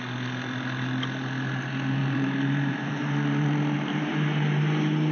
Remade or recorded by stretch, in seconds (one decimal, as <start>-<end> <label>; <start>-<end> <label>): 0.0-2.0 recorded; 2.0-4.6 remade; 4.6-5.1 recorded